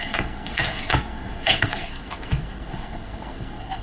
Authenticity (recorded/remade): remade